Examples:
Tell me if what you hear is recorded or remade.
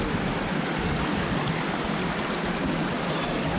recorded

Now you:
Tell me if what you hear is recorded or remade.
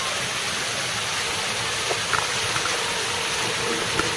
recorded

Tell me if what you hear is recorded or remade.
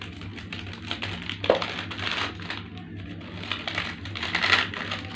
recorded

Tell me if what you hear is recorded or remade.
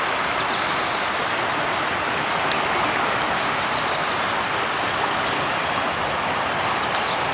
recorded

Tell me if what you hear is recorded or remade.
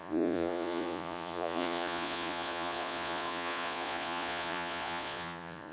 remade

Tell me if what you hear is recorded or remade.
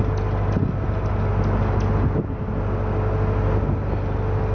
recorded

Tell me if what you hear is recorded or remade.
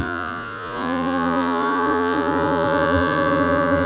remade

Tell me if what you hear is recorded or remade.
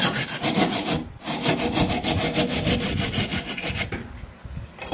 recorded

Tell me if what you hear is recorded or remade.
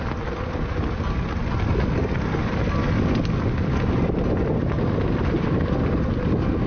recorded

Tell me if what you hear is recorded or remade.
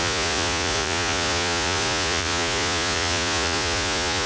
remade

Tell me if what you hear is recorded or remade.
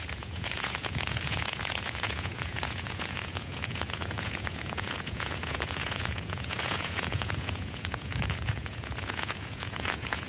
remade